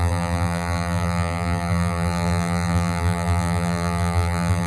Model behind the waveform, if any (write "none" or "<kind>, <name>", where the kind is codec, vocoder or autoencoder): vocoder, BigVGAN v2